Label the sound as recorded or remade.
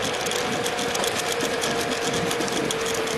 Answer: recorded